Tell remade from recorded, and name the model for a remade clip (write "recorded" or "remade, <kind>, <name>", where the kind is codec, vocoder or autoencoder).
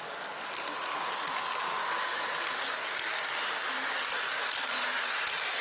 recorded